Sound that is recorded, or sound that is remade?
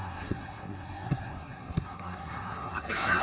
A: remade